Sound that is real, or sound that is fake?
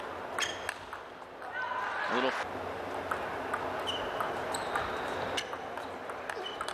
real